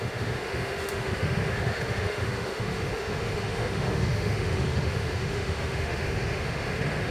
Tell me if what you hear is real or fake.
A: fake